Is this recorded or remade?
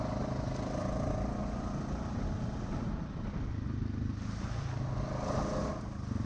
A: recorded